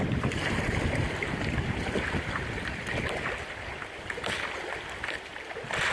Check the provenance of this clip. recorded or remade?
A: recorded